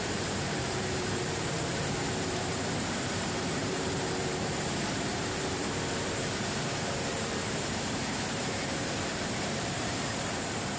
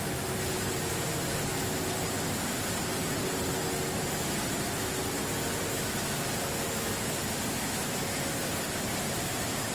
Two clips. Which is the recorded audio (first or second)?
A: second